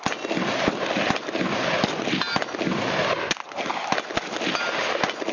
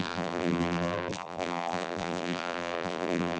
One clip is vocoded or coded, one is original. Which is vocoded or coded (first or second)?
second